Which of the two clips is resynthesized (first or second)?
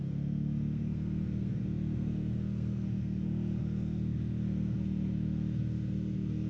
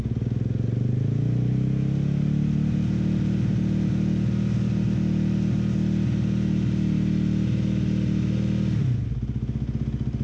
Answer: first